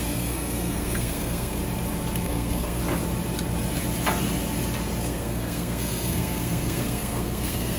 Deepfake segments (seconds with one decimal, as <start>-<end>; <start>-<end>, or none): 0.0-1.6; 2.2-2.8; 5.0-7.8